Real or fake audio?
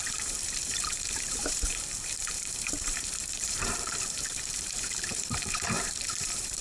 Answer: fake